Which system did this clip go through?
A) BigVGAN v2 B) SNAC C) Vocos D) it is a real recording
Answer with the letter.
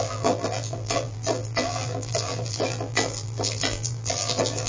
A